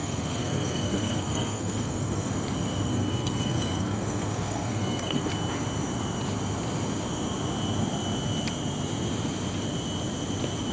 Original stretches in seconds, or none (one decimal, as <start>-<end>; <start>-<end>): 2.3-2.9; 5.3-10.7